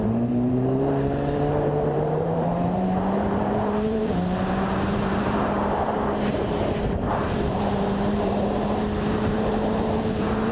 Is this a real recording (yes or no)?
no